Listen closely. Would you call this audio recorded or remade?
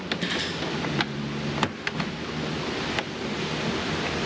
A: recorded